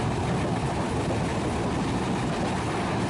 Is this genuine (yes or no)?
yes